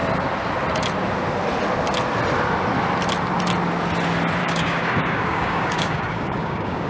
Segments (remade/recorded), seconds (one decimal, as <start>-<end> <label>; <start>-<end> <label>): 0.0-4.4 recorded; 4.4-6.9 remade